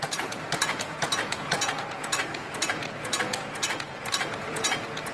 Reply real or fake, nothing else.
fake